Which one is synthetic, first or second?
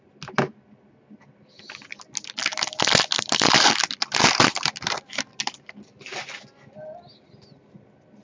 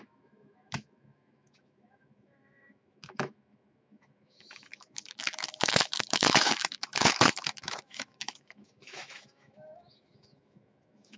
second